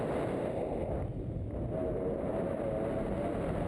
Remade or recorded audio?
recorded